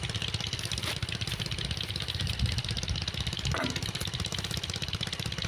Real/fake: real